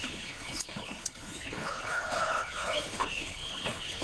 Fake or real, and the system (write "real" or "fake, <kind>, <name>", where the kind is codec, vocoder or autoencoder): fake, codec, HILCodec